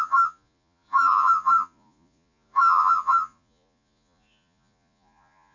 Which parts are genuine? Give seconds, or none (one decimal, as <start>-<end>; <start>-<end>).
none